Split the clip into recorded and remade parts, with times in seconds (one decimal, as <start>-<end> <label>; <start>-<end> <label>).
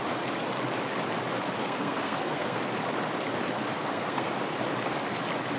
0.0-1.6 recorded; 1.6-2.6 remade; 2.6-3.8 recorded; 3.8-4.3 remade; 4.3-5.6 recorded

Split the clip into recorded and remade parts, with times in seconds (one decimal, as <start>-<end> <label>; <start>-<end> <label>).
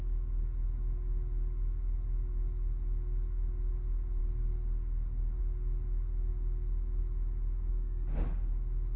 0.0-4.2 recorded; 4.2-5.4 remade; 5.4-7.7 recorded; 7.7-8.5 remade; 8.5-9.0 recorded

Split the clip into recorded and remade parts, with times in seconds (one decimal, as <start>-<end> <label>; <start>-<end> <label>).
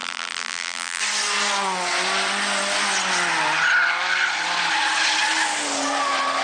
0.0-1.0 remade; 1.0-6.4 recorded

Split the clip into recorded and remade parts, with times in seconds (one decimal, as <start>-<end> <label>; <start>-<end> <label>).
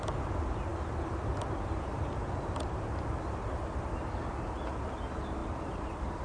0.0-6.2 recorded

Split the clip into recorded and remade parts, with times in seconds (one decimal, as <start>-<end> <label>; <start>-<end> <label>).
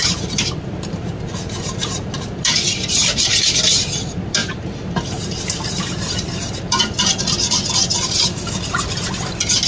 0.0-3.4 remade; 3.4-4.4 recorded; 4.4-7.2 remade; 7.2-9.7 recorded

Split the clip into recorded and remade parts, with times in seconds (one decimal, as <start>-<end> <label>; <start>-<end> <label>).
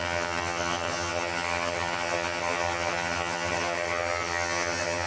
0.0-5.1 remade